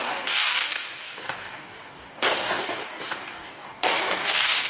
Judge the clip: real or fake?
fake